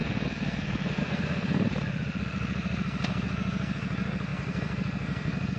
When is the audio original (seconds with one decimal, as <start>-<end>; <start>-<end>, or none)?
1.7-2.2